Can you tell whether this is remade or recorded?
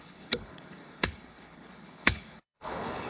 remade